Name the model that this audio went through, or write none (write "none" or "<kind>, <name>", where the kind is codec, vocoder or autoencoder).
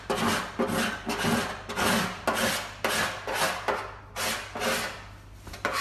none